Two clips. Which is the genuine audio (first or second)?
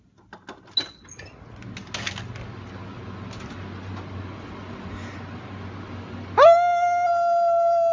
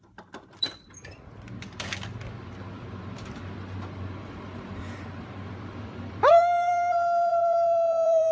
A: first